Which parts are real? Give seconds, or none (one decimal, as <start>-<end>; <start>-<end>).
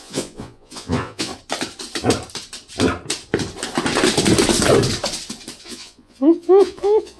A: 1.3-5.6